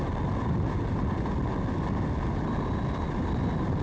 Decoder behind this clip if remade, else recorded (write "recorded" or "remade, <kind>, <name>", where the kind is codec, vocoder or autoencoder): recorded